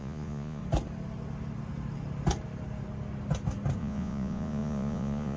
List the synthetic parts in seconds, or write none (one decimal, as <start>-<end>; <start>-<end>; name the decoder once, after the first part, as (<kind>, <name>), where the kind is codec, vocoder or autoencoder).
0.0-0.6 (vocoder, Vocos); 3.8-5.4